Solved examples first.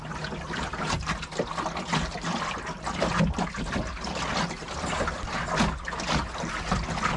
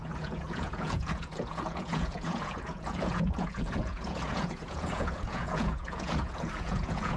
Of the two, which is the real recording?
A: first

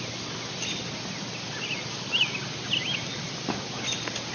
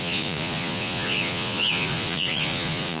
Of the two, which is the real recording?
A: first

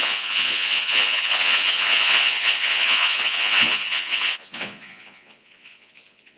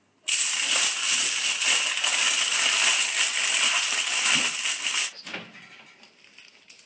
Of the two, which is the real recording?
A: second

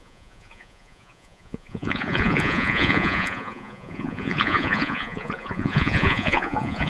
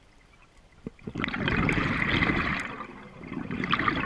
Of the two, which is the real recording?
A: second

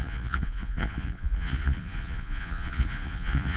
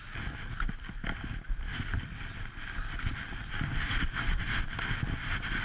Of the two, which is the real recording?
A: second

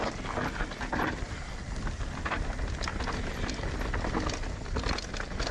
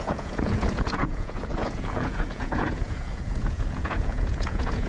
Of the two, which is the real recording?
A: first